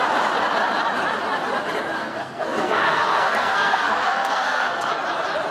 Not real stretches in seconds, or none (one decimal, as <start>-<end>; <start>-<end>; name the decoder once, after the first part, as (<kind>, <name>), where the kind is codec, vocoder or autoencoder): 2.0-4.9 (codec, SNAC)